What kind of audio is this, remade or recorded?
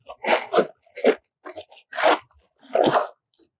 recorded